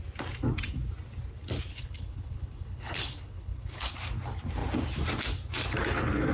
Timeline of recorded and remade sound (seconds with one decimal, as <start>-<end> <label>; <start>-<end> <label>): 0.0-1.7 recorded; 1.7-3.9 remade; 3.9-6.3 recorded